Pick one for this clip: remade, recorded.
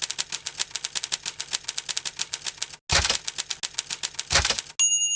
recorded